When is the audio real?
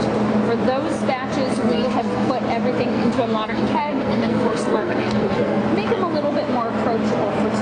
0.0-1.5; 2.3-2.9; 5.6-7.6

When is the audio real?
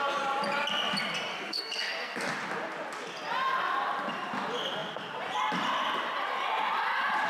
0.0-1.3; 2.3-7.3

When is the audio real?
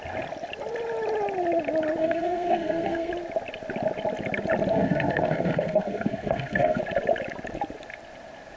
0.0-2.0; 3.1-4.7; 6.8-8.6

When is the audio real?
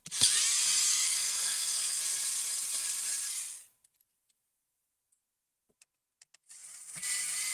0.0-0.9; 2.0-7.5